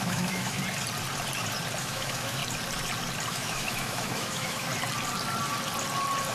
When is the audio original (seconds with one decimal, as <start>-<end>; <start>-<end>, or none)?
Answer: 0.6-1.8; 2.4-3.3; 4.7-6.3